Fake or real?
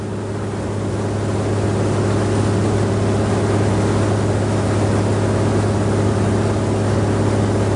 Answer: real